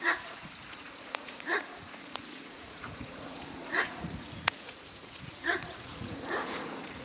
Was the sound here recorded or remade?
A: remade